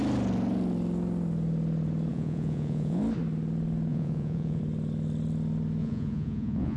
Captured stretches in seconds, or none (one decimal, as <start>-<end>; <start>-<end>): 0.0-2.1; 3.0-3.9; 4.6-5.8